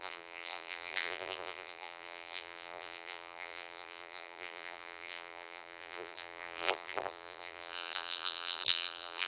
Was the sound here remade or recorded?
remade